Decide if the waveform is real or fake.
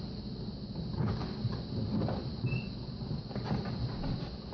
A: real